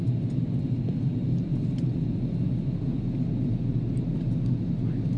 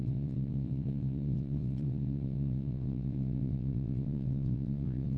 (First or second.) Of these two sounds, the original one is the first